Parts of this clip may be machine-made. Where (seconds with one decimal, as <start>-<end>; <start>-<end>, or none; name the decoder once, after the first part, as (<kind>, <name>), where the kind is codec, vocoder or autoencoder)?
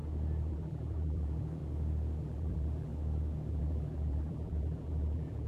0.5-1.6 (vocoder, BigVGAN v2); 2.2-2.9; 3.5-5.5